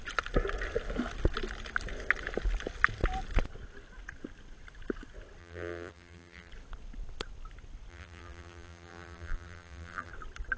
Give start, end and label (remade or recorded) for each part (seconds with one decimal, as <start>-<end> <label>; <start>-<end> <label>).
0.0-5.4 recorded; 5.4-6.5 remade; 6.5-7.9 recorded; 7.9-10.1 remade; 10.1-10.6 recorded